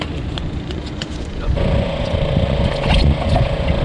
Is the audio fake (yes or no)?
yes